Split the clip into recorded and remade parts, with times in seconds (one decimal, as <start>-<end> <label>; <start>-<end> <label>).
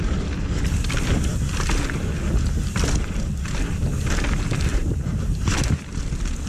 0.0-4.7 recorded; 4.7-5.8 remade; 5.8-6.5 recorded